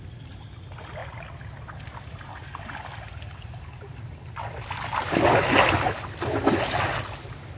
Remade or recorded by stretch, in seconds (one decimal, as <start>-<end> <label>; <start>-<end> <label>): 0.0-7.6 recorded